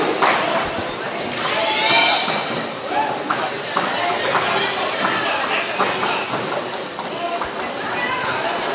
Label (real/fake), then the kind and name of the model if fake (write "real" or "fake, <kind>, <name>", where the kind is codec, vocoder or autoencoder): real